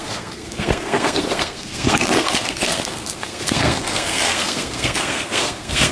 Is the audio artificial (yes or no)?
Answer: yes